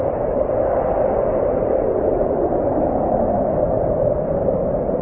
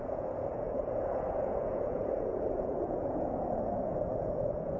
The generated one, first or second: second